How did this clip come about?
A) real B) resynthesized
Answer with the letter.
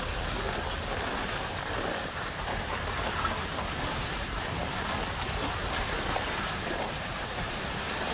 B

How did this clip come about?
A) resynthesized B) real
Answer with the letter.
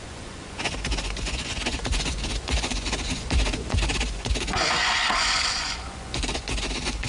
A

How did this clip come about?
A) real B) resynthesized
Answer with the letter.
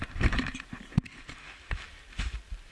B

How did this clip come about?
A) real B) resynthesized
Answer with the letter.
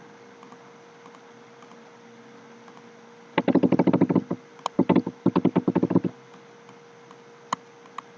A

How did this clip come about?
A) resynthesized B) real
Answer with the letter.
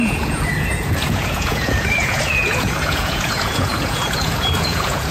A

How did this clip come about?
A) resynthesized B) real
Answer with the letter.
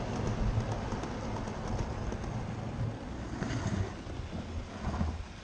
B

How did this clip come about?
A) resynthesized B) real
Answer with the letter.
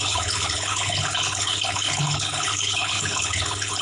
A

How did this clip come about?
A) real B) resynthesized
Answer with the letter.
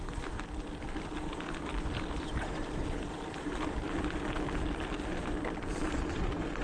A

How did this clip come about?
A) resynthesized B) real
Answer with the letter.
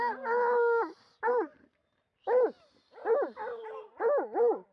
B